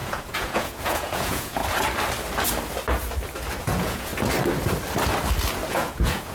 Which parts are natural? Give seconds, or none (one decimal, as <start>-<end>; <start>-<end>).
1.6-3.6; 4.1-5.7